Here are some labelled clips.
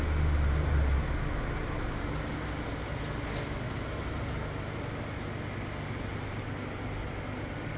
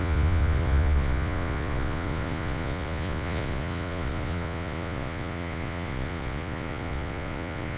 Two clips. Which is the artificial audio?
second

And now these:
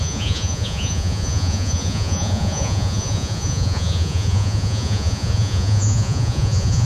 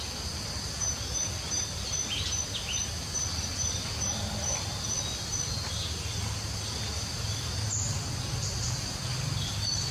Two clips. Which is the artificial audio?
first